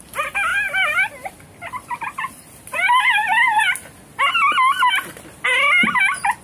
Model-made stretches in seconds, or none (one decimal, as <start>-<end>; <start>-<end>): none